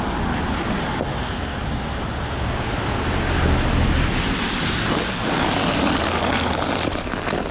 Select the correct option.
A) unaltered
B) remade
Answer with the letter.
A